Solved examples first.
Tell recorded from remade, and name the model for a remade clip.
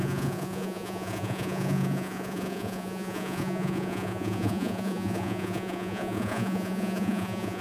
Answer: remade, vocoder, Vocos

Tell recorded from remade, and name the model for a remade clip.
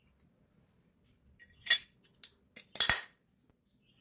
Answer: recorded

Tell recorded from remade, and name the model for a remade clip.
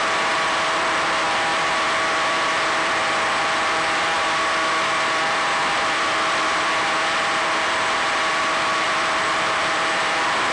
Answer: remade, vocoder, BigVGAN v2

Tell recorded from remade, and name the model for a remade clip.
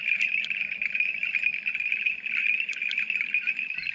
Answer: recorded